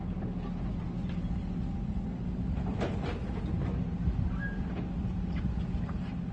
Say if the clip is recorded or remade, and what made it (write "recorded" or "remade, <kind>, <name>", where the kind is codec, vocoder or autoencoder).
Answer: recorded